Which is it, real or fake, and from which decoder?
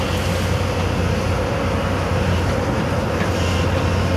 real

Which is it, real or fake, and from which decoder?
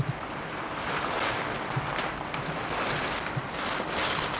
real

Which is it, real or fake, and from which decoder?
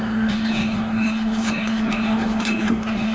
fake, codec, SNAC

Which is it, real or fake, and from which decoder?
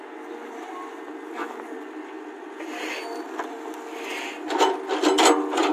real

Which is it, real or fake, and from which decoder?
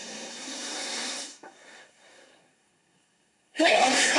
fake, codec, SNAC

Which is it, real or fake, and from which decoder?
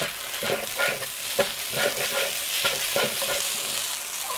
real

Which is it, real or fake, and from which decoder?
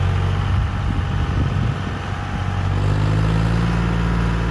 real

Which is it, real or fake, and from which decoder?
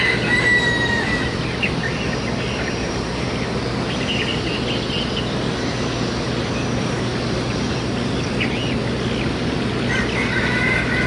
real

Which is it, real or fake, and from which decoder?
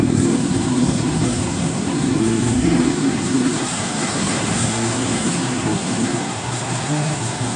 fake, codec, SNAC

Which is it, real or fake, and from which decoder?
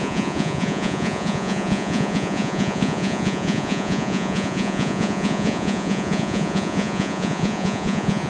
fake, vocoder, Vocos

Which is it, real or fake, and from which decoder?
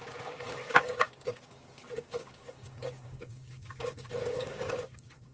fake, codec, DAC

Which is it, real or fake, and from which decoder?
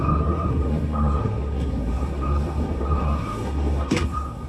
fake, codec, SNAC